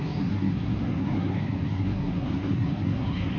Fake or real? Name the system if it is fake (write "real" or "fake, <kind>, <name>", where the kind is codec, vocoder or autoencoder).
fake, codec, SNAC